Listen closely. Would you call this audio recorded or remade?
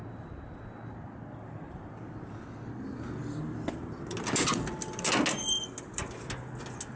recorded